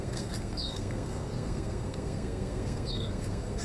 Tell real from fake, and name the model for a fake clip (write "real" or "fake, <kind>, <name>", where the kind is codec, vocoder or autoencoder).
fake, codec, SNAC